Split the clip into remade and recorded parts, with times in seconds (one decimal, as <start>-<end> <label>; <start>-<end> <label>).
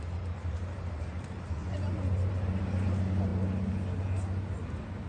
0.0-5.1 recorded